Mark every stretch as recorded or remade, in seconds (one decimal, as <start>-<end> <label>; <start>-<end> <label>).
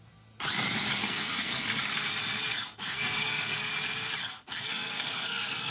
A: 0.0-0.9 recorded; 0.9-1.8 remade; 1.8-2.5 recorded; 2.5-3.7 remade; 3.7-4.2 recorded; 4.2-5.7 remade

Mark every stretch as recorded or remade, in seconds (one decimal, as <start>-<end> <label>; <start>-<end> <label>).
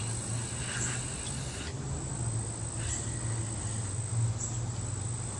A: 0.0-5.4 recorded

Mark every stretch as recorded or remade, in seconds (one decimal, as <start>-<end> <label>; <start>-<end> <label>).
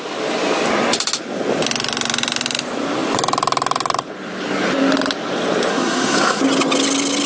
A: 0.0-5.7 recorded; 5.7-6.4 remade; 6.4-7.3 recorded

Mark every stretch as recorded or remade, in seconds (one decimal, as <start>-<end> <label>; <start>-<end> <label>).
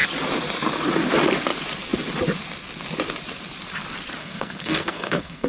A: 0.0-4.2 recorded; 4.2-5.5 remade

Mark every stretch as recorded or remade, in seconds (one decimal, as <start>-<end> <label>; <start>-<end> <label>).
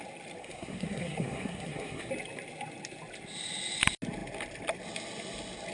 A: 0.0-0.4 recorded; 0.4-2.1 remade; 2.1-5.7 recorded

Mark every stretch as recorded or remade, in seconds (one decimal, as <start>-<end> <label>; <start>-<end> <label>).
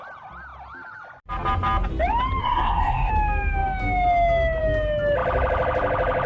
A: 0.0-2.4 recorded; 2.4-3.1 remade; 3.1-6.3 recorded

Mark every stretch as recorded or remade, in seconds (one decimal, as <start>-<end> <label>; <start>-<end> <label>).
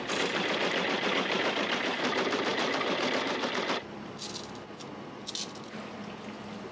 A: 0.0-6.7 recorded